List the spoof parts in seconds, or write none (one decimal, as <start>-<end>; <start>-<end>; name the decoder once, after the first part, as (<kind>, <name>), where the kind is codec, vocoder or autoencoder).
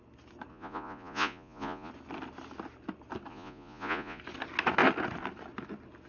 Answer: 0.5-1.9 (vocoder, Vocos); 3.3-4.2